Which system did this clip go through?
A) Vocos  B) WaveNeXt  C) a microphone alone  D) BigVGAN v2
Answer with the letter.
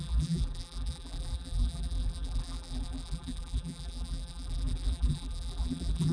D